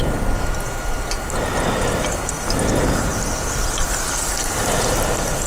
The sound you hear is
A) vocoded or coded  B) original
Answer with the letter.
B